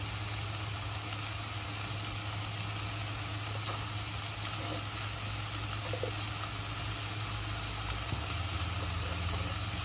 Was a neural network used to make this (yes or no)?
no